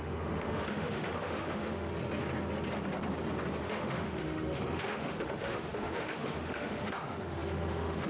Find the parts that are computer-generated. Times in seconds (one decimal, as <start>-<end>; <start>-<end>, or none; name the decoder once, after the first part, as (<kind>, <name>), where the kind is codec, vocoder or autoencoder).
0.0-1.9 (autoencoder, DAC-VAE); 3.6-8.1